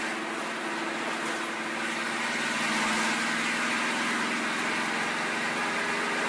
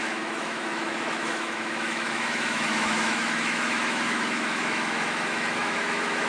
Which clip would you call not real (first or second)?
second